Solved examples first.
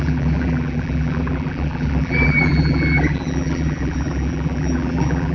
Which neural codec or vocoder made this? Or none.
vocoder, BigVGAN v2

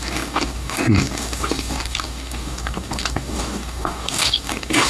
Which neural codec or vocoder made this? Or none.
codec, DAC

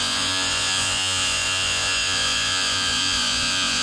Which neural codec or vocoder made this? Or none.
vocoder, Vocos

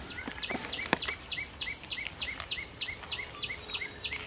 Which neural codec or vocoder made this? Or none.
none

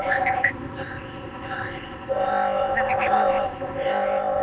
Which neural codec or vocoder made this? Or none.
codec, ZipCodec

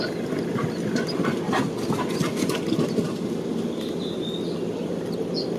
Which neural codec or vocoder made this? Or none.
none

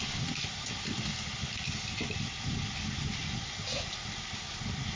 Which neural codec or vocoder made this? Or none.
none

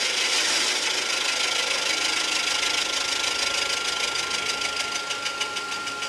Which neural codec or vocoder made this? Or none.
none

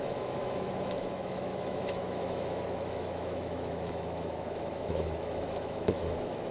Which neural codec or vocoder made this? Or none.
autoencoder, DAC-VAE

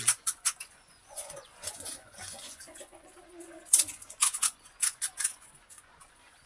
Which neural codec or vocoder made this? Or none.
vocoder, Vocos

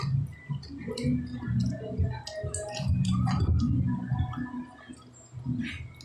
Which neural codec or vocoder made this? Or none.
none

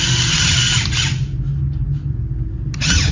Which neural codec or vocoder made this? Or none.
none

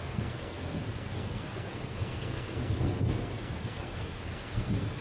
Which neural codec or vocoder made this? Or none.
codec, SNAC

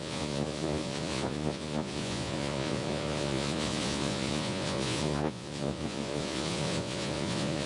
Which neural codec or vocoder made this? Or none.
vocoder, Vocos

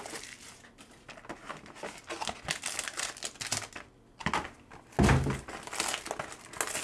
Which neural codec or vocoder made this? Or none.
none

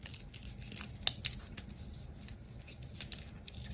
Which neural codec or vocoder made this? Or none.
none